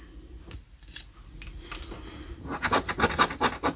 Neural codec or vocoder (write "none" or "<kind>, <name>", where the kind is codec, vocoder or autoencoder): none